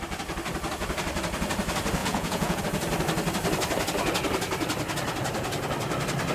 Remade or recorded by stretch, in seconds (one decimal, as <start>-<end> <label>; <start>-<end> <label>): 0.0-2.0 recorded; 2.0-2.6 remade; 2.6-6.3 recorded